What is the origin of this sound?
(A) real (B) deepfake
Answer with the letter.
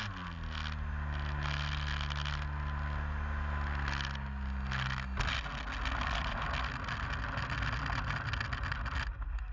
A